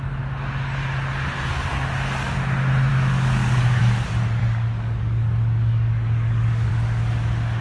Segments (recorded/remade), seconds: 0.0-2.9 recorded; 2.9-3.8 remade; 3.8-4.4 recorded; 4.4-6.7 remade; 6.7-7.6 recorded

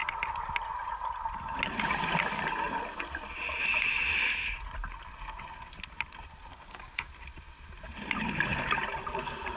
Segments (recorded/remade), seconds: 0.0-6.5 recorded; 6.5-7.1 remade; 7.1-9.6 recorded

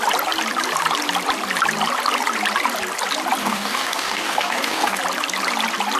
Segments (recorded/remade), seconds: 0.0-3.4 recorded; 3.4-5.0 remade; 5.0-6.0 recorded

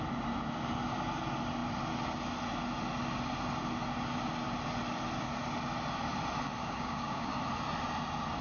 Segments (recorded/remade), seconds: 0.0-6.6 recorded; 6.6-7.3 remade; 7.3-8.4 recorded

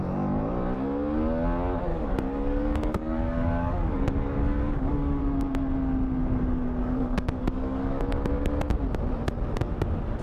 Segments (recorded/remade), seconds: 0.0-1.9 recorded; 1.9-5.2 remade; 5.2-6.2 recorded; 6.2-8.0 remade; 8.0-10.2 recorded

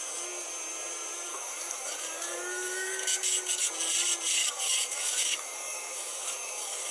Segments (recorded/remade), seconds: 0.0-1.3 recorded; 1.3-3.7 remade; 3.7-4.4 recorded; 4.4-6.9 remade

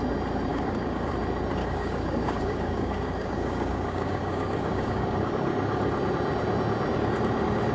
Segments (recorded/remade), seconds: 0.0-0.5 recorded; 0.5-1.1 remade; 1.1-1.6 recorded; 1.6-5.3 remade; 5.3-7.7 recorded

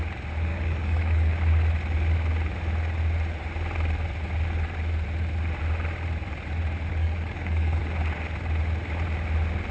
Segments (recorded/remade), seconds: 0.0-0.5 recorded; 0.5-1.3 remade; 1.3-6.9 recorded; 6.9-7.8 remade; 7.8-9.7 recorded